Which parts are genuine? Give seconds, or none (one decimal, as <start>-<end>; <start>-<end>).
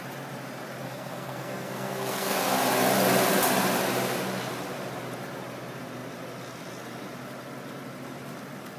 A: 0.0-0.8; 2.4-8.8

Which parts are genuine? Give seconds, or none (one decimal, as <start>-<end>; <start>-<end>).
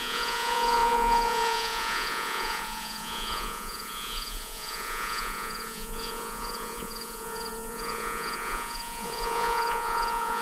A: none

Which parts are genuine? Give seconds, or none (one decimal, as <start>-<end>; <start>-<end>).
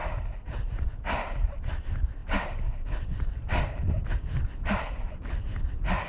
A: none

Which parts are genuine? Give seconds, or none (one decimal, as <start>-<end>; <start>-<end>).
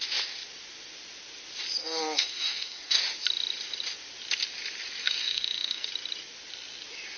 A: 0.0-1.8; 3.0-5.0; 5.9-7.2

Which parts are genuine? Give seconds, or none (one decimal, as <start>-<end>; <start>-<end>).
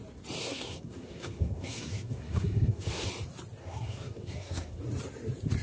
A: 0.0-0.4; 3.1-3.6; 4.8-5.6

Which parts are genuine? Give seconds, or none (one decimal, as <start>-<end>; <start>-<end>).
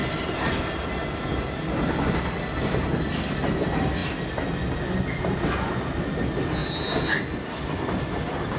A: 0.0-8.6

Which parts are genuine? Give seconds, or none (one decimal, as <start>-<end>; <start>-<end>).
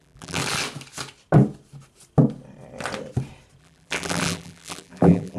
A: 0.4-3.6